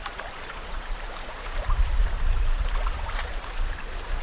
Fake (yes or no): yes